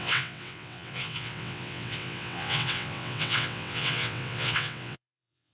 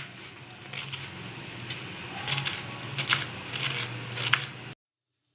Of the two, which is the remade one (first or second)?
first